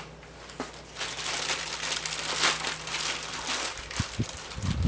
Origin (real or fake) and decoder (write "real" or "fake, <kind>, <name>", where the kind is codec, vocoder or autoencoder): real